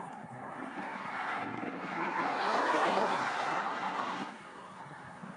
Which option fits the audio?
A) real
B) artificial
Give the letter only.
B